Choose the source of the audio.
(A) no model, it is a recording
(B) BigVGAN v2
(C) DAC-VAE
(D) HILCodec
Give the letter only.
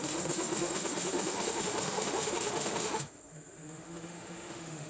C